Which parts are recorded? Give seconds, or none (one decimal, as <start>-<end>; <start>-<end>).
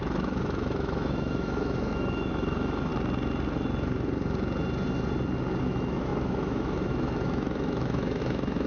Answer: 2.9-5.6